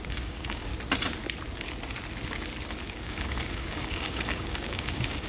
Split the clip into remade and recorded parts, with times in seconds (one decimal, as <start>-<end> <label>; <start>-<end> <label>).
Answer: 0.0-0.7 remade; 0.7-2.9 recorded; 2.9-5.3 remade